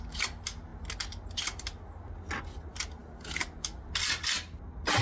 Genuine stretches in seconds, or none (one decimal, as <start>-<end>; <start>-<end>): 0.0-5.0